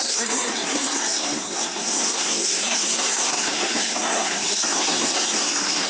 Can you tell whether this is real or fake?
fake